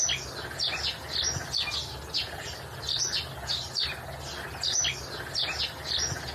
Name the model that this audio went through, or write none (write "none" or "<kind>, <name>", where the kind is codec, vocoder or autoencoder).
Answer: none